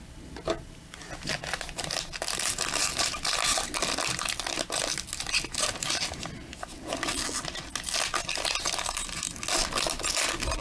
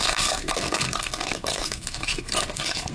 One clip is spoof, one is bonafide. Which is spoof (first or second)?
second